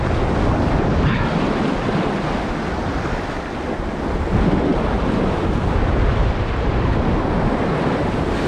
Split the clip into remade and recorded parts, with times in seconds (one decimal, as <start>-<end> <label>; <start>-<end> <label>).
0.0-8.5 recorded